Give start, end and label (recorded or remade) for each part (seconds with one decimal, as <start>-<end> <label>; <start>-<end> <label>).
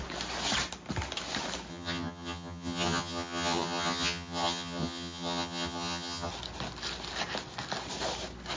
0.0-1.7 recorded; 1.7-6.3 remade; 6.3-8.6 recorded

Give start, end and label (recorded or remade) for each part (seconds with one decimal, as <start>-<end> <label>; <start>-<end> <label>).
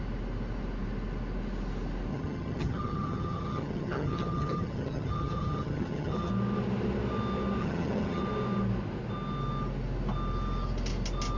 0.0-2.1 recorded; 2.1-6.3 remade; 6.3-7.6 recorded; 7.6-8.2 remade; 8.2-11.4 recorded